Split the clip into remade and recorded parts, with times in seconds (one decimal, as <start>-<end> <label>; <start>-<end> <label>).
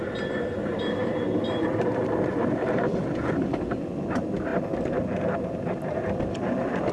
0.0-4.5 remade; 4.5-5.5 recorded; 5.5-6.9 remade